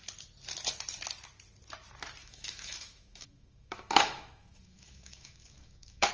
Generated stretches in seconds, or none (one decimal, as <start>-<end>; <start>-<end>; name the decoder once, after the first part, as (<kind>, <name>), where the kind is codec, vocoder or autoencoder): 2.2-6.1 (autoencoder, DAC-VAE)